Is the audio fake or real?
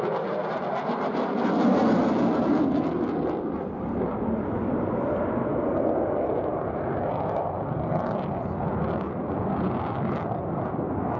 real